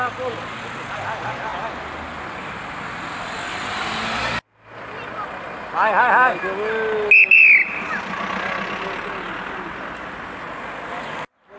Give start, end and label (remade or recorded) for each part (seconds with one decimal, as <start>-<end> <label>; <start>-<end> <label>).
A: 0.0-11.6 recorded